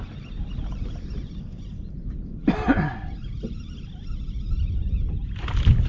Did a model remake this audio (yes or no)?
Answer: no